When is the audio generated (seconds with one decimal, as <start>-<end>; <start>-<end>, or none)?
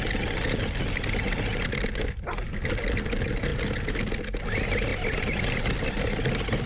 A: 4.9-6.0